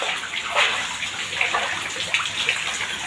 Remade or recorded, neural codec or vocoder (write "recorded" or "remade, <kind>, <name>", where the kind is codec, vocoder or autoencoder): recorded